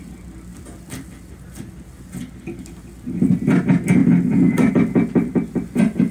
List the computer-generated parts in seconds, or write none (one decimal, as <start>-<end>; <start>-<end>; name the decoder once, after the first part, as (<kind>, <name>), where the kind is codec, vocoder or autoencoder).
none